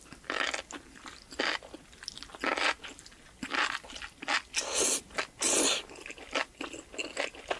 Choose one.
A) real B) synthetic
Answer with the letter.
A